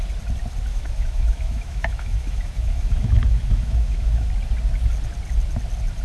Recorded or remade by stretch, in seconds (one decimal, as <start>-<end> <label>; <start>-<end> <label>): 0.0-0.7 recorded; 0.7-4.3 remade; 4.3-6.0 recorded